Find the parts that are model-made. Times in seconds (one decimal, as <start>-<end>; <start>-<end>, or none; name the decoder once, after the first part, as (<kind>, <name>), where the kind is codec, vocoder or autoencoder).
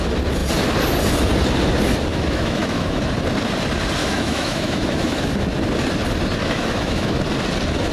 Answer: 2.1-3.0 (autoencoder, DAC-VAE); 4.0-5.2; 6.4-7.2